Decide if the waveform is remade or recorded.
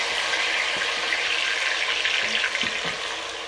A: recorded